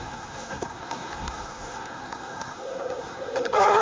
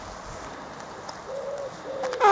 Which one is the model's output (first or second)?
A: first